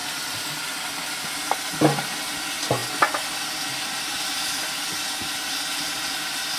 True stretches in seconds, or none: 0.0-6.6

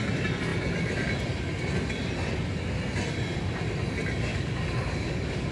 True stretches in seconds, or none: 0.0-4.3

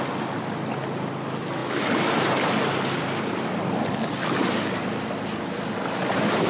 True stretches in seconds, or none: 0.0-6.5

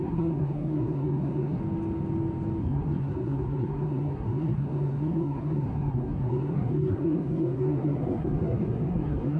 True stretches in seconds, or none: 1.6-2.6

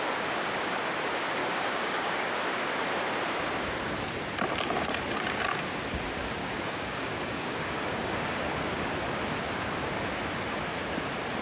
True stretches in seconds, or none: 0.0-1.4; 2.3-6.4; 8.6-11.4

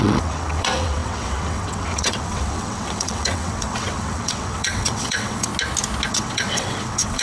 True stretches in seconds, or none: 5.5-6.1

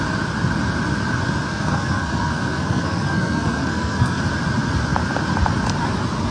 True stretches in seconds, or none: 0.0-1.5; 4.2-6.3

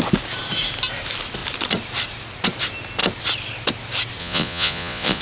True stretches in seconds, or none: 0.0-4.2